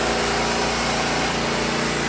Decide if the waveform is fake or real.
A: real